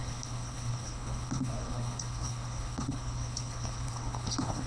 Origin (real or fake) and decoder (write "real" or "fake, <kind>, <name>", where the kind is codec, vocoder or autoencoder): fake, codec, HILCodec